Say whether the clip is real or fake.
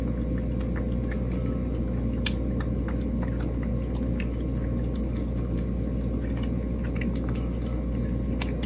real